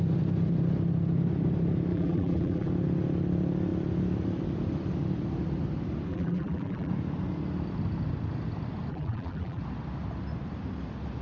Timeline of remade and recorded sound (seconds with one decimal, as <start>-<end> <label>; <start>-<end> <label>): 0.0-1.9 recorded; 1.9-2.7 remade; 2.7-6.1 recorded; 6.1-6.9 remade; 6.9-8.9 recorded; 8.9-9.6 remade; 9.6-11.2 recorded